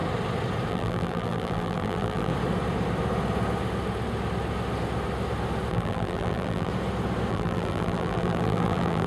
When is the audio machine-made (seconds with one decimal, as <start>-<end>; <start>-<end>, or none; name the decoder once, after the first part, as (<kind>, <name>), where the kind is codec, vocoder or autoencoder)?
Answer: 0.7-2.3 (vocoder, BigVGAN v2); 5.7-6.7; 7.3-9.1